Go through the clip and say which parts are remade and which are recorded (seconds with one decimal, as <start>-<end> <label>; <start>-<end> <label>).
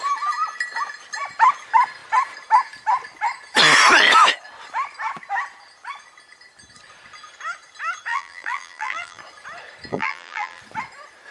0.0-8.1 recorded; 8.1-9.2 remade; 9.2-9.9 recorded; 9.9-10.6 remade; 10.6-11.3 recorded